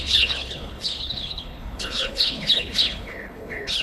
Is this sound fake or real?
fake